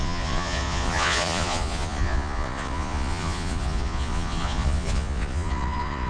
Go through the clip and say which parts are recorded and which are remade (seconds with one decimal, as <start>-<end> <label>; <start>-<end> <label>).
0.0-6.1 remade